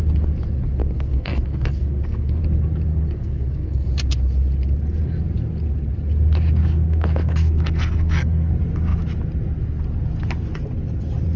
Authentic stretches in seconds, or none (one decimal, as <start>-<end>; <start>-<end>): 0.0-0.8; 2.4-2.9; 3.9-6.6; 8.5-11.4